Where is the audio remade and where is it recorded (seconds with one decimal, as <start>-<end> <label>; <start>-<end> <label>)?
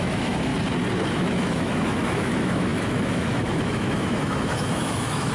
0.0-0.5 remade; 0.5-1.1 recorded; 1.1-5.3 remade